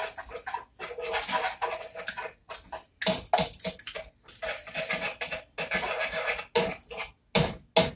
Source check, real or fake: real